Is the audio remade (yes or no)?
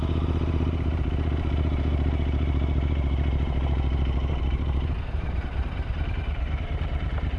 yes